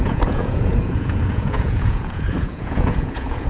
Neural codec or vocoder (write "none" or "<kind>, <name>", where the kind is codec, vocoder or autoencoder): vocoder, Vocos